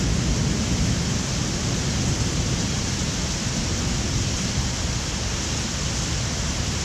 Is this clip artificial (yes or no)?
no